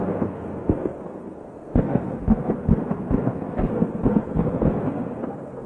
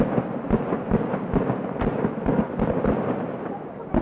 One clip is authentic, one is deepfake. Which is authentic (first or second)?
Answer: second